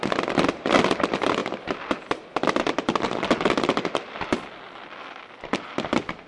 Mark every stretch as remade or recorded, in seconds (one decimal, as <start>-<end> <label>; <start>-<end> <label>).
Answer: 0.0-6.3 recorded